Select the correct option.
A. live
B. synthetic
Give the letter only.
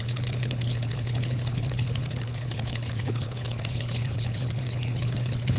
B